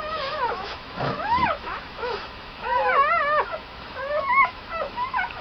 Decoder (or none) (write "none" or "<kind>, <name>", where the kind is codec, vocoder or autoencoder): autoencoder, DAC-VAE